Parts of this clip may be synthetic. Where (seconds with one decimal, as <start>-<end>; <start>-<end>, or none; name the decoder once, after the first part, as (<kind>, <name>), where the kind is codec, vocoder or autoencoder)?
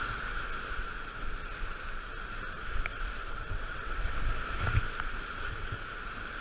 2.9-4.2 (vocoder, WaveNeXt)